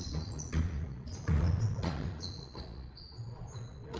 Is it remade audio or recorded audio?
remade